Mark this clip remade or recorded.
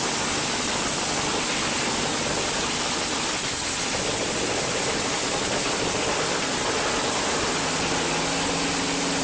recorded